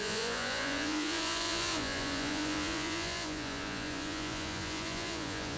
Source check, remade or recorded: remade